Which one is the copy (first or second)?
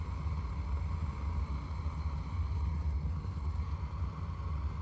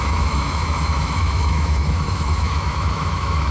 second